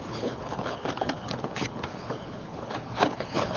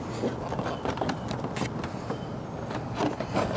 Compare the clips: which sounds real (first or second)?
second